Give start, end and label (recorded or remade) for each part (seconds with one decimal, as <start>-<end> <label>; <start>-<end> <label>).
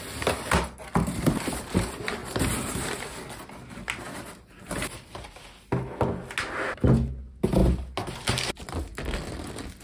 0.0-9.8 recorded